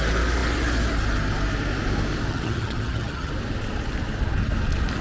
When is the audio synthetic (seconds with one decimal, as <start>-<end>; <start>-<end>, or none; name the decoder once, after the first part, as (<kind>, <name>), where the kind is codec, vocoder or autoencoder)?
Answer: 2.3-3.3 (vocoder, HiFi-GAN)